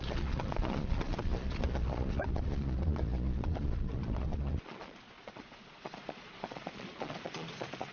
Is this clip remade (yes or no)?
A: yes